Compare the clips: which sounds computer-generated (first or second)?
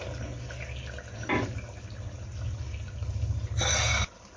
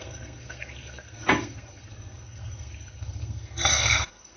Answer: second